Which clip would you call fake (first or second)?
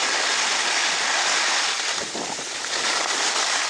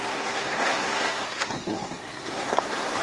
second